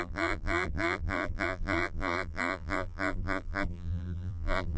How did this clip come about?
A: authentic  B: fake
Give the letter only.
B